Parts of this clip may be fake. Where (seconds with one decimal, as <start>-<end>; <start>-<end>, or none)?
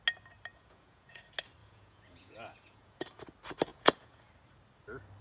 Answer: 0.5-1.2; 1.6-3.2; 3.7-4.3